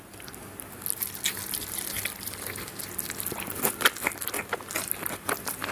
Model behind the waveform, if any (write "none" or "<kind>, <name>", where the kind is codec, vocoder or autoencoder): none